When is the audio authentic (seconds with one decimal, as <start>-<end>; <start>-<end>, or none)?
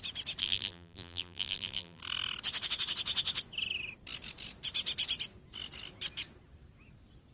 0.0-0.4; 2.0-7.3